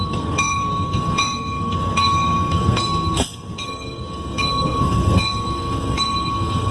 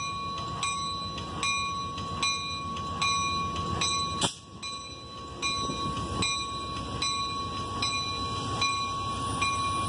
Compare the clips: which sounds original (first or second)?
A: second